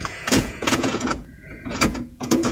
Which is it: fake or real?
fake